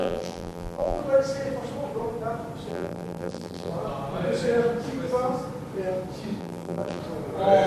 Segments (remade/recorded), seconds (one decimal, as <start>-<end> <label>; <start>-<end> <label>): 0.0-1.0 remade; 1.0-2.7 recorded; 2.7-3.7 remade; 3.7-6.4 recorded; 6.4-7.0 remade; 7.0-7.7 recorded